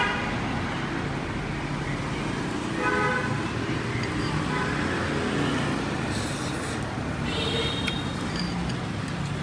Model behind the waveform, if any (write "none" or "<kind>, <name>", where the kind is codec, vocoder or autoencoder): none